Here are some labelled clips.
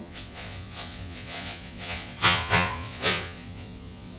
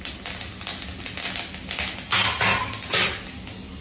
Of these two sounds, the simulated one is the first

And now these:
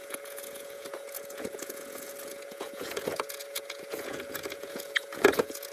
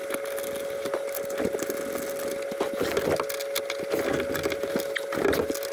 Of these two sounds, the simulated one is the first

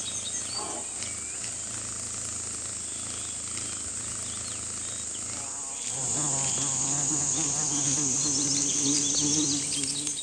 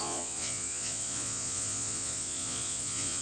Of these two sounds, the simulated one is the second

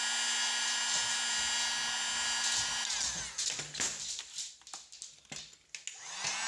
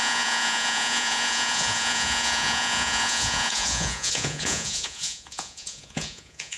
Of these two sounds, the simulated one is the second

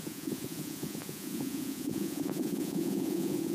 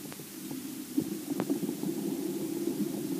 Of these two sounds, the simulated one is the first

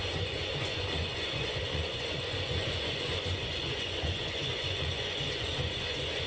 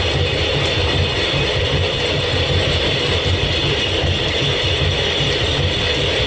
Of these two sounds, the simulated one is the first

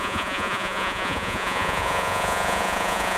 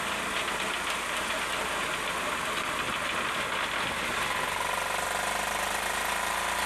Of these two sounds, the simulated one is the first